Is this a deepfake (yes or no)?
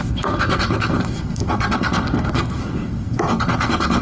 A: yes